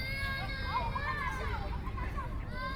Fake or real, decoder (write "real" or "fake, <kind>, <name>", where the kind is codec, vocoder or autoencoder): real